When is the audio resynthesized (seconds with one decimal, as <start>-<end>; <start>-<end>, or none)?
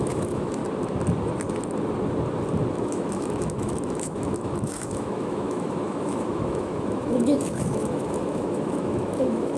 0.0-0.6; 2.7-9.6